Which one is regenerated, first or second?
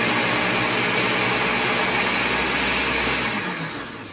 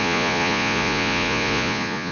second